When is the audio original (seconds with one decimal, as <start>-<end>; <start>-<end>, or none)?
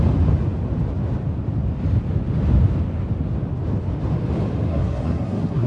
0.0-4.7